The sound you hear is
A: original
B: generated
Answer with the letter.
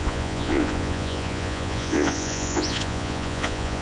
B